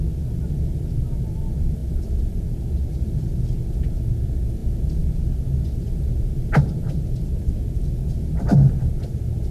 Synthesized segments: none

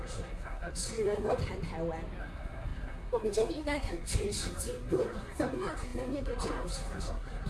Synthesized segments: 0.0-1.4 (codec, SNAC); 2.2-7.5

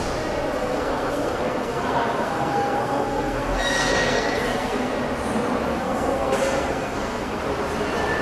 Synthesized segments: 0.6-4.9 (codec, SNAC); 5.7-7.4

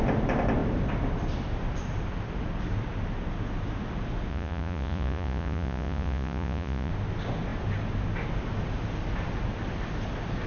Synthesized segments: 4.3-6.9 (vocoder, Vocos)

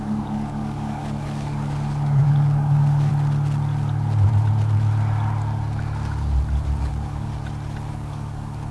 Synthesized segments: 0.0-3.1 (codec, DAC); 6.8-7.3; 7.9-8.7

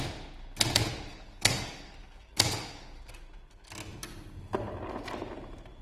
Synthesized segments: 1.1-3.1 (codec, DAC)

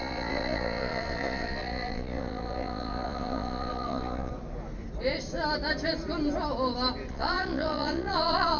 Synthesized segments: 0.0-4.3 (vocoder, Vocos); 7.1-8.6

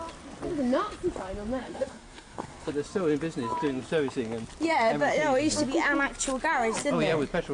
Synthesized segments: 1.6-2.7 (codec, SNAC)